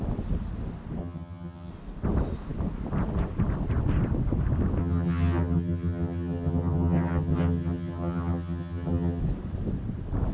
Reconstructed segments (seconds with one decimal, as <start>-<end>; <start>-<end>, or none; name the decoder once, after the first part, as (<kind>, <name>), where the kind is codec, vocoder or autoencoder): 1.0-1.7 (vocoder, HiFi-GAN); 4.8-9.2